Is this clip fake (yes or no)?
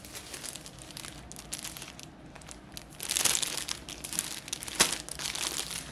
no